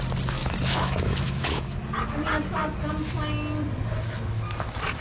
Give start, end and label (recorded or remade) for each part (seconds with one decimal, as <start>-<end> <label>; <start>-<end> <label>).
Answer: 0.0-0.4 recorded; 0.4-1.6 remade; 1.6-5.0 recorded